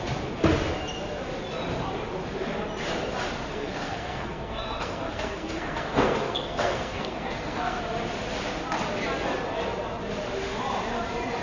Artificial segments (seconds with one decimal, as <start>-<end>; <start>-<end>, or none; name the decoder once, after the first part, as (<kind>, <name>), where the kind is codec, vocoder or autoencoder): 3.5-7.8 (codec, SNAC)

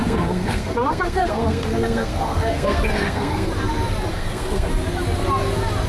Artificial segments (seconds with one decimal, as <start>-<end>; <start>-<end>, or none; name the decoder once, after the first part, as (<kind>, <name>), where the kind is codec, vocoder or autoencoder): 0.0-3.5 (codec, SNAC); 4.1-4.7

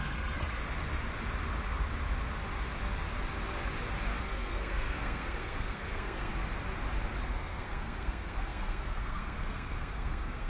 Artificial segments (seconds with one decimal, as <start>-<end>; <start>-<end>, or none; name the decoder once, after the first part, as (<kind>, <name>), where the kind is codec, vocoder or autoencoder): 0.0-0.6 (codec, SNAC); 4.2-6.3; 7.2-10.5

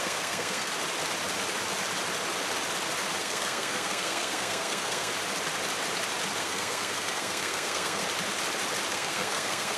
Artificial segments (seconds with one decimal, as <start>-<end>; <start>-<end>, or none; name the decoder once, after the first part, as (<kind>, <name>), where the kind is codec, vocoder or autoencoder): 0.0-0.7 (codec, SNAC); 3.2-5.1; 6.4-8.0; 8.9-9.8

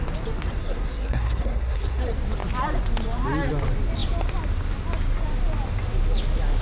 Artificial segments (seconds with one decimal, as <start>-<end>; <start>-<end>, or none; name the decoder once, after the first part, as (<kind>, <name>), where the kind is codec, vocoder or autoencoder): 0.6-2.0 (codec, SNAC)

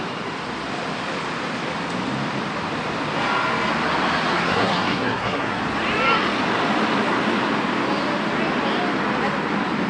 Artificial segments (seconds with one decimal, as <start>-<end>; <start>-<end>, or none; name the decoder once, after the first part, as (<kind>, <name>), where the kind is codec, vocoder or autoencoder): 4.3-5.6 (codec, SNAC)

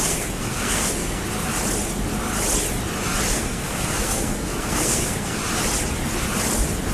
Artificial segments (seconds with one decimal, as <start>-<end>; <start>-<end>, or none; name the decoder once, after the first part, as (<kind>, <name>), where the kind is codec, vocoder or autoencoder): 0.0-1.2 (codec, SNAC); 3.3-5.4